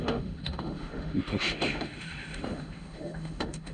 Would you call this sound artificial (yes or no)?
yes